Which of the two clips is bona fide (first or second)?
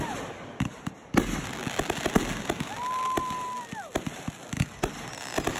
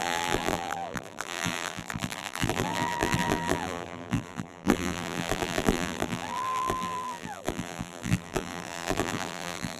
first